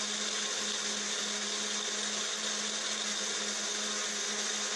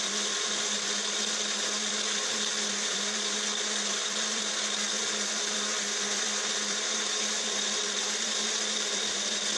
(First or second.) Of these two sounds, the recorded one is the first